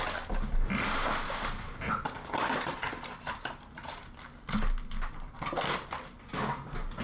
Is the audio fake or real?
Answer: real